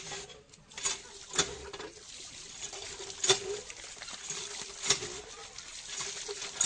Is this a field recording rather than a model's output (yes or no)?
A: yes